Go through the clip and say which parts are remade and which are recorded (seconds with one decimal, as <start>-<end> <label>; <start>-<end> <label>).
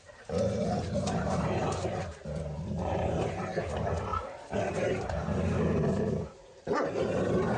0.0-4.1 remade; 4.1-4.7 recorded; 4.7-7.6 remade